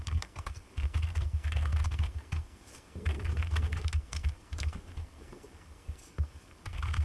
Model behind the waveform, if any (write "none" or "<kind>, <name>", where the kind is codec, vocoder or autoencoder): codec, SNAC